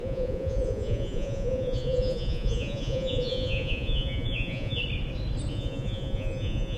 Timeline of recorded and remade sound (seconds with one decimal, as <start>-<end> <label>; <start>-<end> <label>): 0.0-4.8 remade; 4.8-5.5 recorded; 5.5-6.8 remade